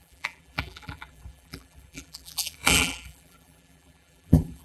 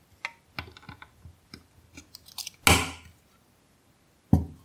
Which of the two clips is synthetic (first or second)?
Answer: first